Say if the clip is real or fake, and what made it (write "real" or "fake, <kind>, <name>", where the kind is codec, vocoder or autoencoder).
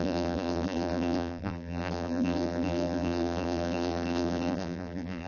fake, vocoder, BigVGAN v2